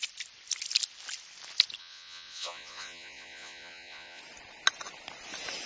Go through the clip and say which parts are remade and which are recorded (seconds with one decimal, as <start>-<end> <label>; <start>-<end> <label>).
0.0-1.8 recorded; 1.8-4.2 remade; 4.2-5.7 recorded